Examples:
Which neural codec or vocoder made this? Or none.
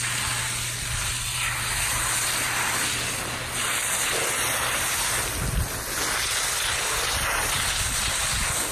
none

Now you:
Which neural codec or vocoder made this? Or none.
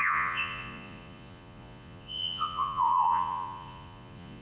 vocoder, Vocos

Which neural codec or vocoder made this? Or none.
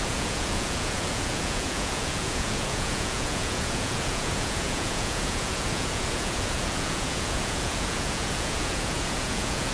vocoder, Vocos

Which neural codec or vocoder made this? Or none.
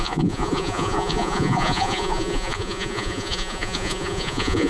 vocoder, Vocos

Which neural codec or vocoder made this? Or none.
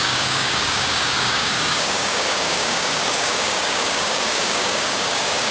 codec, DAC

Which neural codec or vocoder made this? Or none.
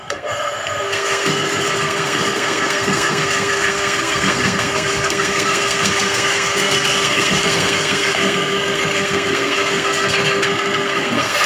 codec, SNAC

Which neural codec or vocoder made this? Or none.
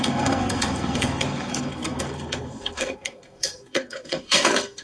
codec, SNAC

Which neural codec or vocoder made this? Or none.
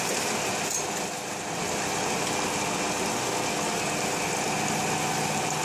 none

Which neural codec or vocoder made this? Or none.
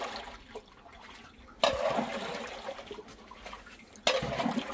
none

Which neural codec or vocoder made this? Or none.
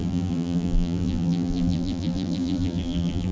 vocoder, BigVGAN v2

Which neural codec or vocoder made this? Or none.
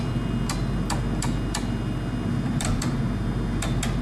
none